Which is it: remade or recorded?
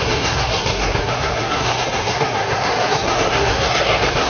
remade